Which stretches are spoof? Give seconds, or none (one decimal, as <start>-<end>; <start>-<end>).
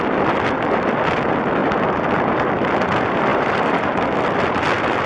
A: 1.6-2.5; 3.3-4.2